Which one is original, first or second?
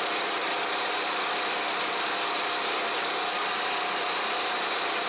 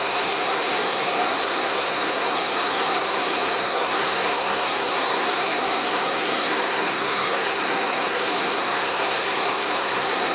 first